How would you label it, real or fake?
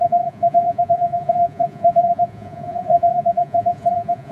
fake